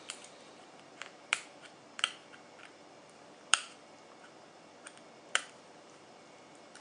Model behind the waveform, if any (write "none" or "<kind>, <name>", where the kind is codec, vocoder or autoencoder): vocoder, BigVGAN v2